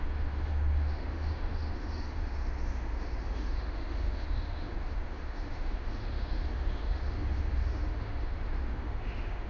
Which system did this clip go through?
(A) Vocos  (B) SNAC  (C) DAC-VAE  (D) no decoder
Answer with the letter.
C